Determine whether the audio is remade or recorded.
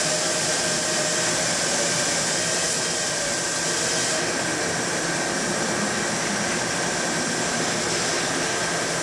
recorded